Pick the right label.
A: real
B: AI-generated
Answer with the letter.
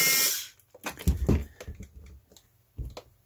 A